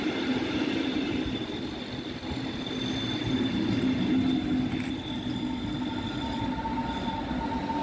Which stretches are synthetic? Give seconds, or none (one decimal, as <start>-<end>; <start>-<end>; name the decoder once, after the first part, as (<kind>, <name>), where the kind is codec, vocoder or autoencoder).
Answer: none